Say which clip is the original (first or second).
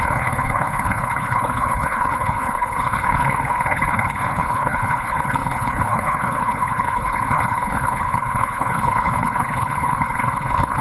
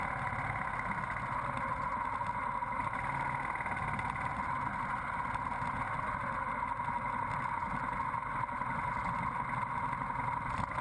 second